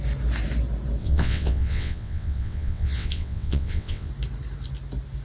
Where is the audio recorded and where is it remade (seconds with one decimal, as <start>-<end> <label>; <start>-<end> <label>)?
0.0-1.0 recorded; 1.0-4.1 remade; 4.1-5.2 recorded